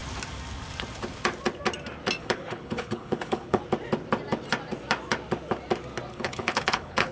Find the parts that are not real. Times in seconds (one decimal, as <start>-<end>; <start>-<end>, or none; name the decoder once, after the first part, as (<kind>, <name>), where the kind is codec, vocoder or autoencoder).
2.2-3.6 (codec, HILCodec); 6.1-7.1

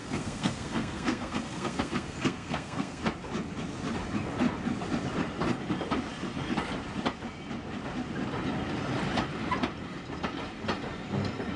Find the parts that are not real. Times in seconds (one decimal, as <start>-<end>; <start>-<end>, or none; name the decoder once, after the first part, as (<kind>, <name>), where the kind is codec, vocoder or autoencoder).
0.0-3.0 (codec, SNAC)

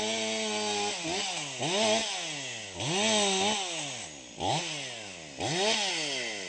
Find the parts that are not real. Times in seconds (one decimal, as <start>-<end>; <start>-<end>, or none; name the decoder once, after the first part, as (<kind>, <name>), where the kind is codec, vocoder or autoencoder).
none

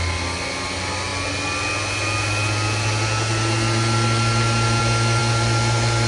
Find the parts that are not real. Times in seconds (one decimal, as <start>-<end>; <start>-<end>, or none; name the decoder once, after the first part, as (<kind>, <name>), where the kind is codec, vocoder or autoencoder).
none

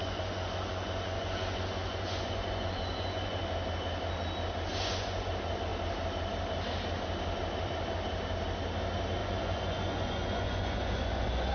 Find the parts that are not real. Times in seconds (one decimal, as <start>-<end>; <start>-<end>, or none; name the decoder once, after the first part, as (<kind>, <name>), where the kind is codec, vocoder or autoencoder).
0.0-3.4 (vocoder, Vocos); 4.7-5.3; 9.2-11.5